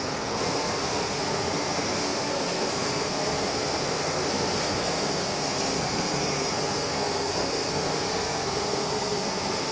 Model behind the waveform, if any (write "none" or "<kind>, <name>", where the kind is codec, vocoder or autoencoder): codec, SNAC